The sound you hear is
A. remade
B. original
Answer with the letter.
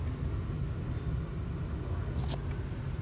B